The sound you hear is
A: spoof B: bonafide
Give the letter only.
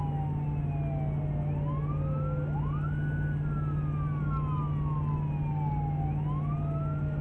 B